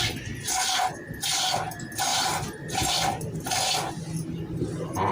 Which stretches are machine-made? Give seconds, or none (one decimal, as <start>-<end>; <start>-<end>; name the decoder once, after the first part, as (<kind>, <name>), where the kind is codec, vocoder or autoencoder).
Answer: none